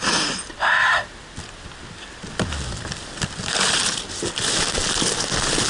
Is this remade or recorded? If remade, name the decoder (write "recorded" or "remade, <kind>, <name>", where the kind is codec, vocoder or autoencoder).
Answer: recorded